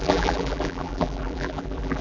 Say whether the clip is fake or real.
fake